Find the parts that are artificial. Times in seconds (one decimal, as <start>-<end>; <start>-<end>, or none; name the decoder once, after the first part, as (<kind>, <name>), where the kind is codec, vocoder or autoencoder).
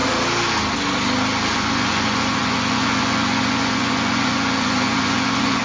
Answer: 1.5-5.6 (vocoder, Vocos)